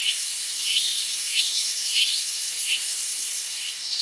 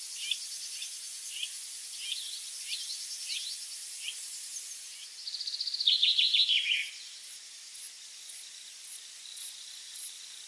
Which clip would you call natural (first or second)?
second